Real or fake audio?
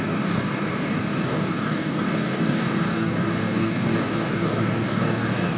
fake